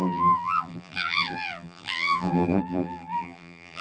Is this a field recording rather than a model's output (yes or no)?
no